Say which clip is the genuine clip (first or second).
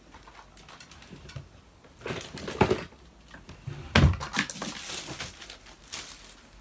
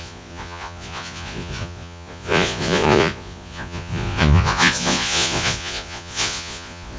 first